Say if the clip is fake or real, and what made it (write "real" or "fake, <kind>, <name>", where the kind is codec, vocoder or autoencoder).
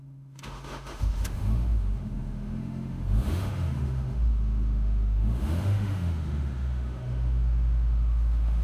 fake, autoencoder, DAC-VAE